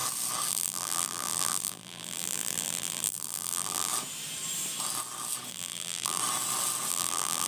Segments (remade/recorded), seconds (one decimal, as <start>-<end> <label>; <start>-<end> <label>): 0.0-0.5 recorded; 0.5-3.9 remade; 3.9-5.5 recorded; 5.5-6.2 remade; 6.2-6.9 recorded; 6.9-7.5 remade